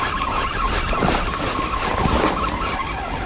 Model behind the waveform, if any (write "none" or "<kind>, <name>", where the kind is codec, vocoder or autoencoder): none